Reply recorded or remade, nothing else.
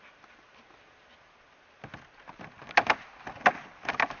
recorded